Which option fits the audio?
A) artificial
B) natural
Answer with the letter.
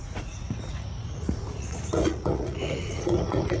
A